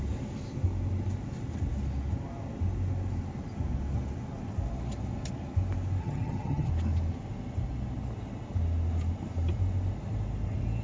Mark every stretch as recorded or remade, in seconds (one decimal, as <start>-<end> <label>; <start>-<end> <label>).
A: 0.0-6.0 recorded; 6.0-6.7 remade; 6.7-10.8 recorded